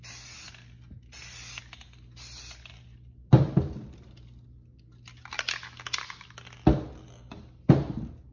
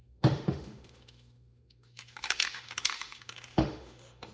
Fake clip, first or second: second